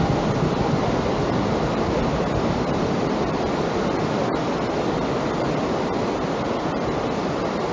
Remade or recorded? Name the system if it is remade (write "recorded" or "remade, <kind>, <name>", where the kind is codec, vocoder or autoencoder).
recorded